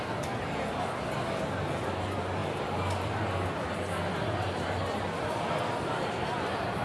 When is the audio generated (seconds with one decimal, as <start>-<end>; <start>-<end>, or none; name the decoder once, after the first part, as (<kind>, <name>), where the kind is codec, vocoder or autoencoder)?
none